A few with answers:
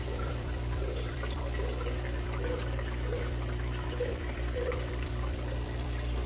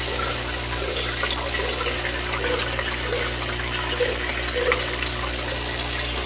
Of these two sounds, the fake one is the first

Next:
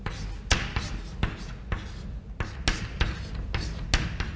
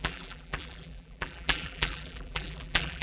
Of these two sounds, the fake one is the second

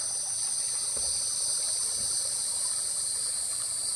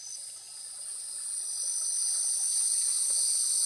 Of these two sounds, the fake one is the first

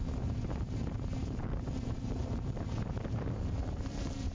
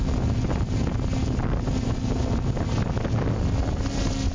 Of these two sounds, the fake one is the first